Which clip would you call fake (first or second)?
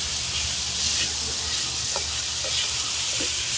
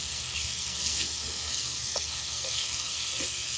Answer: second